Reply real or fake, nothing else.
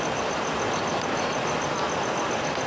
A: real